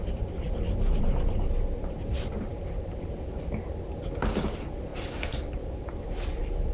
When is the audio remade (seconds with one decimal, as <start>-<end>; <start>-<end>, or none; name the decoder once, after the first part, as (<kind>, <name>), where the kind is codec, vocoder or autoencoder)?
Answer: 0.0-4.9 (vocoder, BigVGAN v2); 6.3-6.7